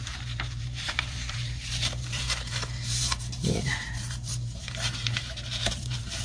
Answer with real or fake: fake